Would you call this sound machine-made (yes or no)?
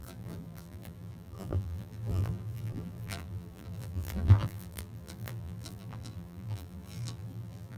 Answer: yes